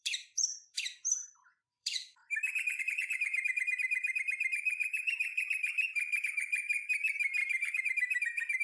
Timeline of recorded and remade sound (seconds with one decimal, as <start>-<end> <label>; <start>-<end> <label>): 0.0-2.2 remade; 2.2-2.8 recorded; 2.8-5.3 remade; 5.3-6.2 recorded; 6.2-8.6 remade